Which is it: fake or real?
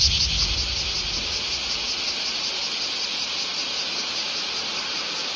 real